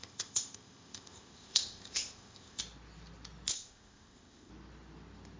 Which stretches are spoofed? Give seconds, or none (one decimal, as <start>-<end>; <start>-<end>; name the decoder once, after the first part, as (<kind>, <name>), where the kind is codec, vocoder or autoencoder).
0.0-2.6 (codec, ZipCodec); 3.5-4.5

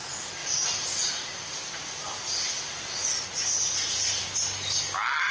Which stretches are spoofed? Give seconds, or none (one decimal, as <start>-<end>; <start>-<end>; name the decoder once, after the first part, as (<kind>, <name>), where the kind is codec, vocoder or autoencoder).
none

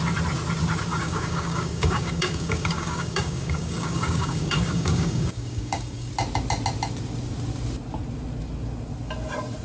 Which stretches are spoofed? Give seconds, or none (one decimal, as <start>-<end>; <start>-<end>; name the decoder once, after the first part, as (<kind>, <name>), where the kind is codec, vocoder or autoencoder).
0.9-6.1 (codec, DAC)